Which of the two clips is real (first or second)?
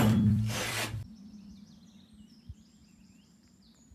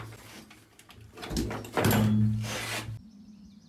second